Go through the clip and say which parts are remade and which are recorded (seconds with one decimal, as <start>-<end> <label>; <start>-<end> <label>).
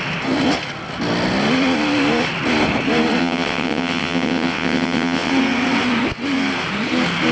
0.0-3.2 recorded; 3.2-5.3 remade; 5.3-7.3 recorded